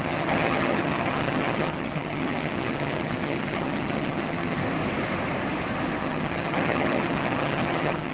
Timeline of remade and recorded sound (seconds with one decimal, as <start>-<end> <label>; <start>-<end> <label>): 0.0-4.6 remade; 4.6-6.0 recorded; 6.0-8.1 remade